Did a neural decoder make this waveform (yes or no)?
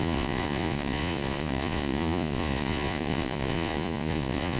yes